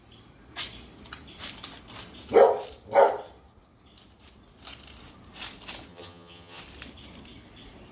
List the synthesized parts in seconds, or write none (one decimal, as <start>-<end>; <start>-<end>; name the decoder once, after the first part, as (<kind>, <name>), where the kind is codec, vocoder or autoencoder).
5.9-6.6 (vocoder, HiFi-GAN)